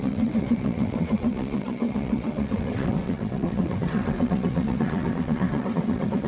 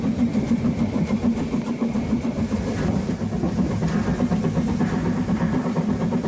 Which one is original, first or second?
second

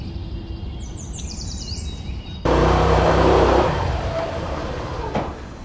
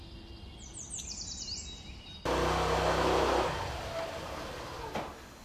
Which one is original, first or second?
second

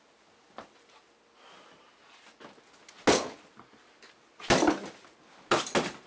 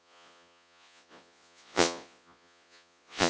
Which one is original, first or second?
first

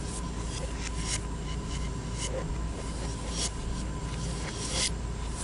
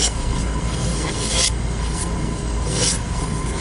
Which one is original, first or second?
first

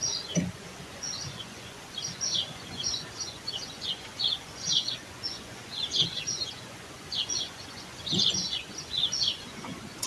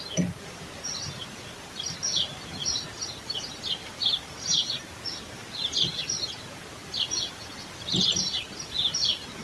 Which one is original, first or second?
second